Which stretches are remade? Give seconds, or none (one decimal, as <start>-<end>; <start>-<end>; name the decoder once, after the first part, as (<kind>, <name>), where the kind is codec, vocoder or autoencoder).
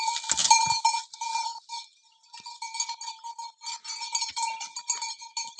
none